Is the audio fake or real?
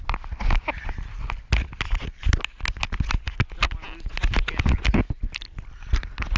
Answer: real